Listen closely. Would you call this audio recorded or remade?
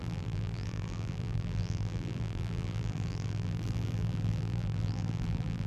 remade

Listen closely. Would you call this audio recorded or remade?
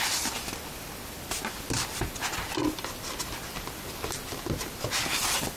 remade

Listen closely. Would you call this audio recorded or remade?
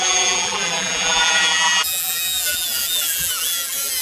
remade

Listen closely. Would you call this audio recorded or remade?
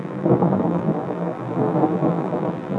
remade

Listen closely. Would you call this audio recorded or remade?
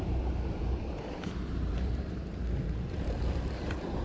remade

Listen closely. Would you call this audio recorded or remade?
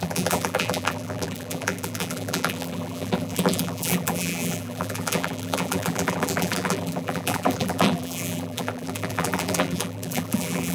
remade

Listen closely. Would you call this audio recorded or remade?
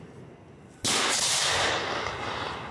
recorded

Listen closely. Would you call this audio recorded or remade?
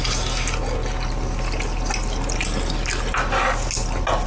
recorded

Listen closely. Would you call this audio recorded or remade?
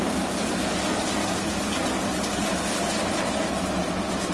recorded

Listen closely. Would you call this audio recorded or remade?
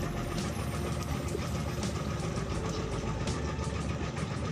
remade